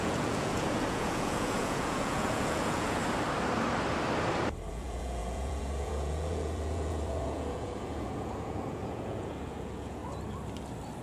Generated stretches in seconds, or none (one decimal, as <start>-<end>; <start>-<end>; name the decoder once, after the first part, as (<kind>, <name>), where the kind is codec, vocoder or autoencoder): 0.0-3.0 (vocoder, Vocos); 4.7-10.0